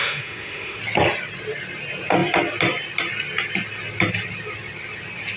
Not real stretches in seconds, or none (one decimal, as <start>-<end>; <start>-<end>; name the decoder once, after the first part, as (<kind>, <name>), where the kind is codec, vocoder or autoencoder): 0.0-0.8 (autoencoder, DAC-VAE)